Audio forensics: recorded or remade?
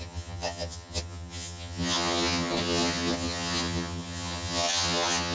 remade